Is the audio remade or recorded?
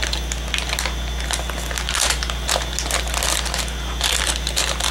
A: recorded